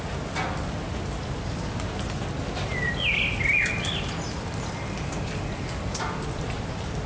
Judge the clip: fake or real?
real